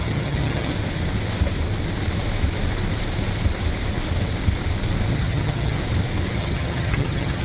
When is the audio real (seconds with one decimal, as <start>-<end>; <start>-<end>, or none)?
0.7-5.1; 5.8-6.3